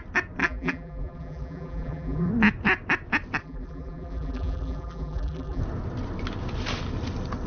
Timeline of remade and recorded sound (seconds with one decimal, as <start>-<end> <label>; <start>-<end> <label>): 0.0-0.4 recorded; 0.4-2.3 remade; 2.3-3.4 recorded; 3.4-5.6 remade; 5.6-7.5 recorded